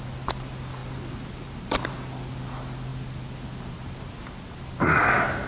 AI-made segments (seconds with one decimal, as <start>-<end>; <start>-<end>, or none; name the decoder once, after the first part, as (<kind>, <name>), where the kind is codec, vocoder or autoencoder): 0.8-1.8 (vocoder, BigVGAN v2)